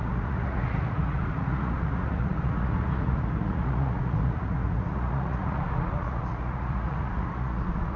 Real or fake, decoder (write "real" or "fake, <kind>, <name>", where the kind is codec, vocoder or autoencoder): fake, vocoder, Vocos